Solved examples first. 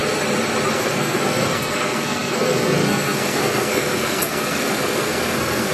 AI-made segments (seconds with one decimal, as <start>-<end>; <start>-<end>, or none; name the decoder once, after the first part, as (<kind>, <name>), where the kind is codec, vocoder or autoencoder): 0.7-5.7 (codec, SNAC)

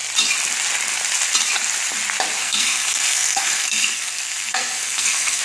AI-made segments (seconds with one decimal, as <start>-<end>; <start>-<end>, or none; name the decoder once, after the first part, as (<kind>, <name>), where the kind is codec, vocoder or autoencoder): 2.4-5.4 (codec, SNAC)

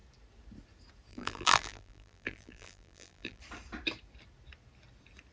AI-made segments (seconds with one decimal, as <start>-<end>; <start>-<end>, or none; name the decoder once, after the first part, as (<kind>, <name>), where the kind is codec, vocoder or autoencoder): 1.1-3.4 (vocoder, BigVGAN v2)